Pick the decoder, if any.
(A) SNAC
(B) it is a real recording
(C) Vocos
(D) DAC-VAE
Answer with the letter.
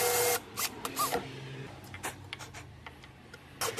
B